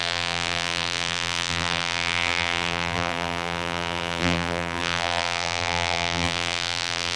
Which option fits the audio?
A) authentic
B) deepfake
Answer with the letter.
B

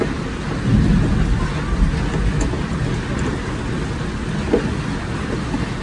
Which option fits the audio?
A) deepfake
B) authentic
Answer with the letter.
B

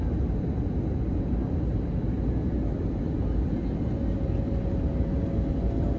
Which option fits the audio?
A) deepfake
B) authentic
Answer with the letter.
B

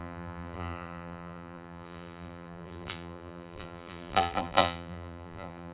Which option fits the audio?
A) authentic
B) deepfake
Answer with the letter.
B